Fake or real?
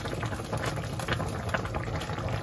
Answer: real